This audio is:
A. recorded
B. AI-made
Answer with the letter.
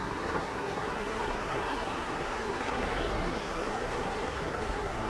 B